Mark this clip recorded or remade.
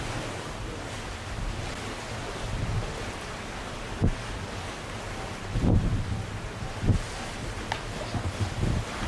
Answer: recorded